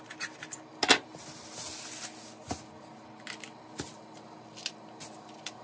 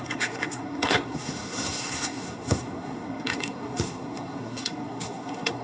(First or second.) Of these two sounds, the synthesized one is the second